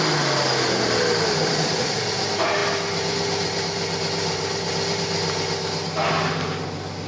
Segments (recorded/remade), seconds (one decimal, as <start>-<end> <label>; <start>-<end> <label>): 0.0-7.1 recorded